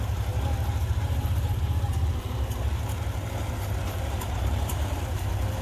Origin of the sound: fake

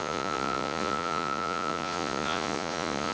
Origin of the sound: fake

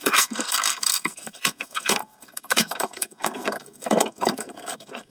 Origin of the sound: fake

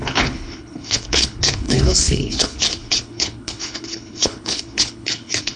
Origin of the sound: fake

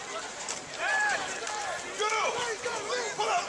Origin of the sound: real